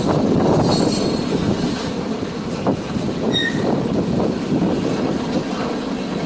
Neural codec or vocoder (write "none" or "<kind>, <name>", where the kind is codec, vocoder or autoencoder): none